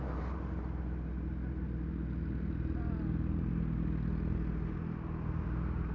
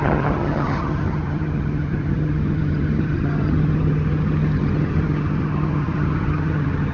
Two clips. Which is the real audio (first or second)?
first